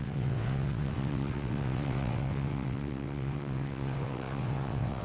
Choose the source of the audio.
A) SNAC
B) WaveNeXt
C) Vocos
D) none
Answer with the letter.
B